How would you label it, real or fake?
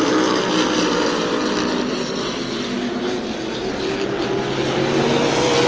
real